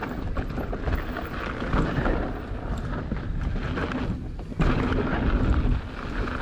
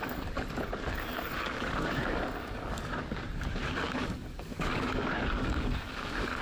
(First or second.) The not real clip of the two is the second